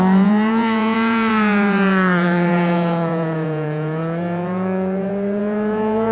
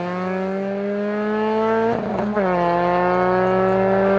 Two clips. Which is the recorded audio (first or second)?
second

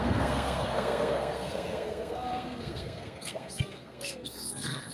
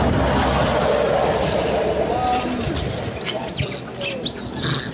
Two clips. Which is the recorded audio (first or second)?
second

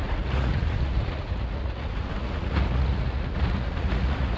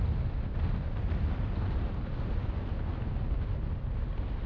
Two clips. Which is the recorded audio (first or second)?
second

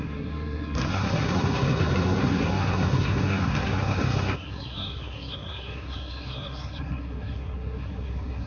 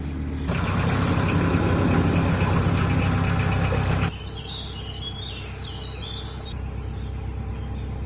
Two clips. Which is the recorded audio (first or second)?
second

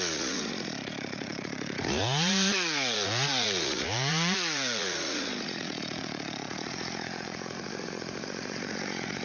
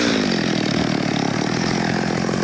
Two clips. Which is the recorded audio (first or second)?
second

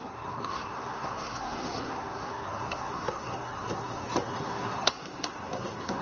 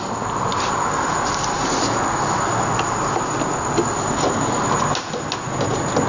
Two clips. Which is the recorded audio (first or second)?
second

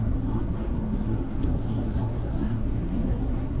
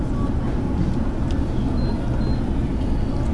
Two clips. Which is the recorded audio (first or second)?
second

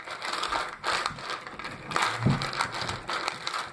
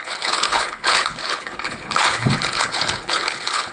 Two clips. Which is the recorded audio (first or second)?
first